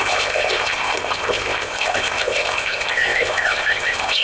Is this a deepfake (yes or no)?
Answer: yes